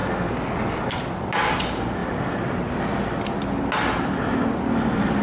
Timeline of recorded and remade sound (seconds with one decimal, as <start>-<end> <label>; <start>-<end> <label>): 0.0-5.2 recorded